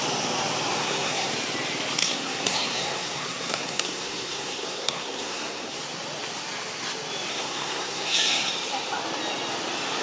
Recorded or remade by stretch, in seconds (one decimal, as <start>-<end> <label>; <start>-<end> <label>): 0.0-0.8 recorded; 0.8-1.3 remade; 1.3-2.0 recorded; 2.0-5.8 remade; 5.8-7.3 recorded; 7.3-8.5 remade; 8.5-10.0 recorded

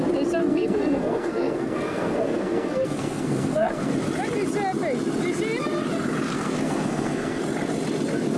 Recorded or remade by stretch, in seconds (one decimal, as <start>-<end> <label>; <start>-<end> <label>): 0.0-0.4 recorded; 0.4-3.9 remade; 3.9-6.3 recorded; 6.3-7.4 remade; 7.4-8.4 recorded

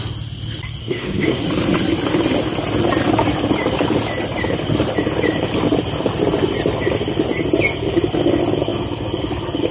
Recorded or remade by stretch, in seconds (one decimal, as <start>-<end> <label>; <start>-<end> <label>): 0.0-0.8 recorded; 0.8-1.4 remade; 1.4-9.7 recorded